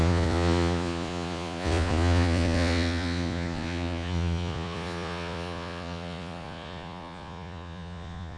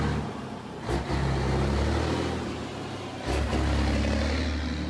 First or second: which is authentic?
second